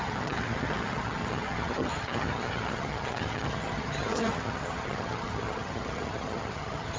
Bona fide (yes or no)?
no